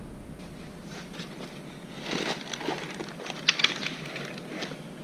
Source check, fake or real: real